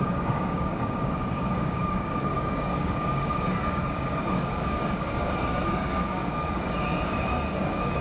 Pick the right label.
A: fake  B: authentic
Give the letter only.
A